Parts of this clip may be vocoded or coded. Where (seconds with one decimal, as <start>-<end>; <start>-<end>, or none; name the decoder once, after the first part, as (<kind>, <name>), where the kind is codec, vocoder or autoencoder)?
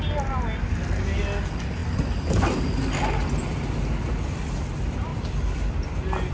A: 5.1-6.3 (vocoder, BigVGAN v2)